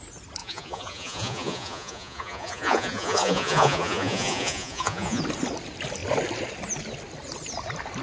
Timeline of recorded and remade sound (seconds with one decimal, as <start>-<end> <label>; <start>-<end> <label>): 0.0-0.4 recorded; 0.4-5.2 remade; 5.2-8.0 recorded